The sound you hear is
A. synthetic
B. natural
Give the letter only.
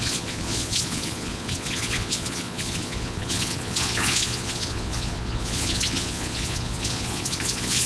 A